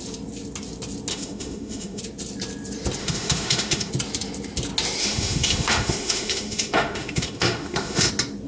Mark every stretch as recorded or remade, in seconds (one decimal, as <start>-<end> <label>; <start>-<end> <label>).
0.0-1.1 recorded; 1.1-2.0 remade; 2.0-3.0 recorded; 3.0-3.9 remade; 3.9-5.0 recorded; 5.0-8.1 remade; 8.1-8.5 recorded

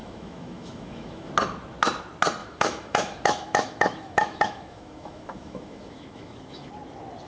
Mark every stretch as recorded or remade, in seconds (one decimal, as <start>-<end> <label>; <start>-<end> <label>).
0.0-1.3 remade; 1.3-2.4 recorded; 2.4-6.7 remade; 6.7-7.3 recorded